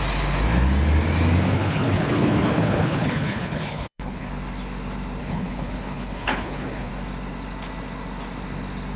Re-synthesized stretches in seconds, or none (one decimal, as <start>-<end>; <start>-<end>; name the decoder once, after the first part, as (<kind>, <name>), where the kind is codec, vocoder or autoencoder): 1.5-4.3 (codec, HILCodec); 5.2-6.9